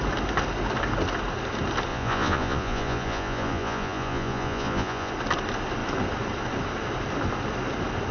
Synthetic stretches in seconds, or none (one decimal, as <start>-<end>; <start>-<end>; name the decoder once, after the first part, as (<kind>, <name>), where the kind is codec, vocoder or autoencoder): 1.9-5.1 (vocoder, Vocos)